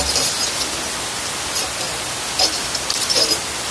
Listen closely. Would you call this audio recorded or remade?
recorded